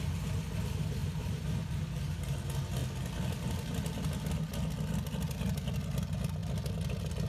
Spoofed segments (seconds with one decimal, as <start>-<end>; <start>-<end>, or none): 1.0-1.6